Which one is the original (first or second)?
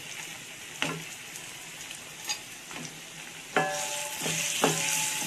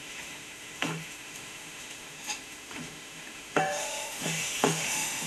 first